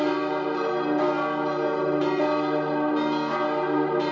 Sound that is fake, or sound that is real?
real